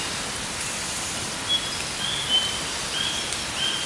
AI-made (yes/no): no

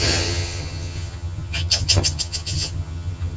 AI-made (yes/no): yes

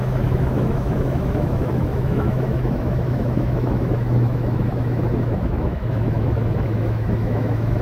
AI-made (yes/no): yes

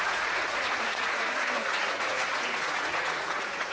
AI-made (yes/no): yes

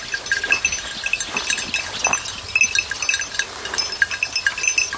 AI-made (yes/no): no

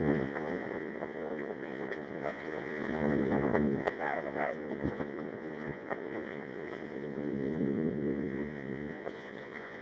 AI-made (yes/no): yes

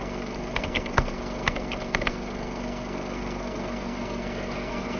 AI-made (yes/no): yes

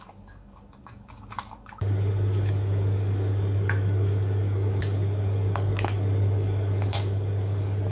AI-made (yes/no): yes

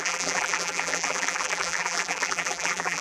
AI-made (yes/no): yes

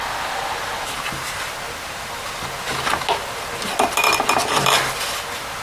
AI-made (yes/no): no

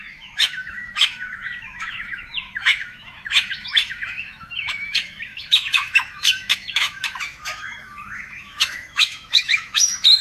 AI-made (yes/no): yes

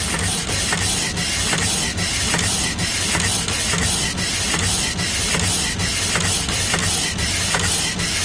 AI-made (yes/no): no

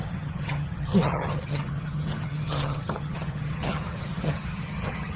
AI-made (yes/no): yes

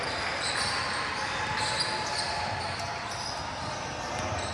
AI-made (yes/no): no